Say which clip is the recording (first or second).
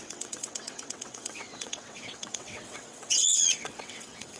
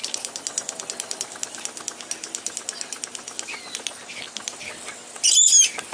second